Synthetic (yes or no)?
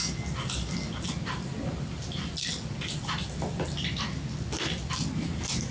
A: no